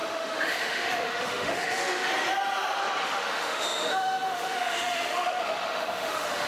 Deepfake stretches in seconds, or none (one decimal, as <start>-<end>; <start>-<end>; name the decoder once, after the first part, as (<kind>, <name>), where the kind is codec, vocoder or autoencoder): 0.0-2.1 (autoencoder, DAC-VAE); 3.0-6.5